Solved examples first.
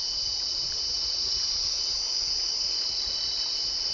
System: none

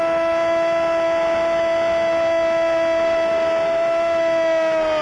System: none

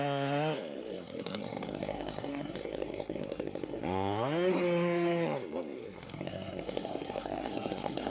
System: codec, SNAC